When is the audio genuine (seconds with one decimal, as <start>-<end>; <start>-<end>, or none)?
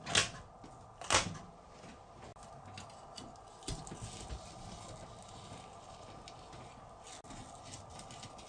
0.0-8.5